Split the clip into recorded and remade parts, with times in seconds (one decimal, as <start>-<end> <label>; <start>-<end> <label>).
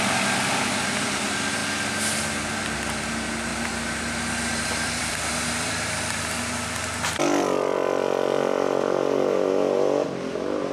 0.0-3.5 recorded; 3.5-6.2 remade; 6.2-10.7 recorded